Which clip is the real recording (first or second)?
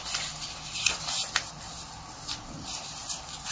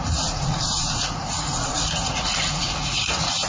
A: first